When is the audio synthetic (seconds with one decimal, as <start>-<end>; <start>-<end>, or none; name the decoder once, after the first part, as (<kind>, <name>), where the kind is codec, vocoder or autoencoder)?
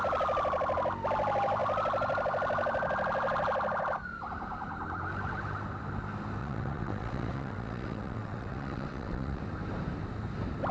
6.4-9.4 (vocoder, WaveNeXt)